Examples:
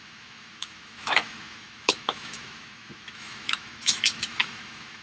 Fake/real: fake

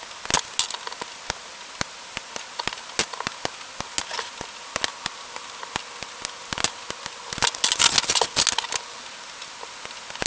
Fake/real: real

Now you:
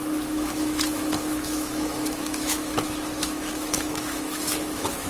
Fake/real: fake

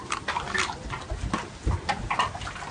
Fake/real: real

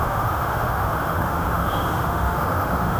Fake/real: fake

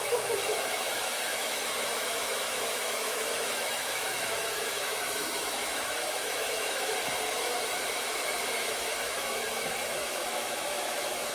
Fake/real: fake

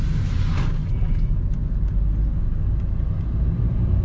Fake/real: real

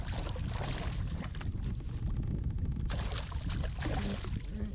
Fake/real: real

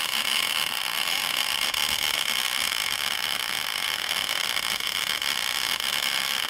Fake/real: fake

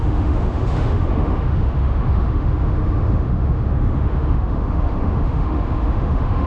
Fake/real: fake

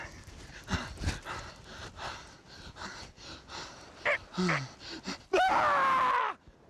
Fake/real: real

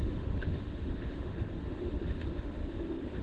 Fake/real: fake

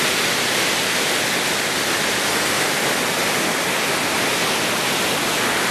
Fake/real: real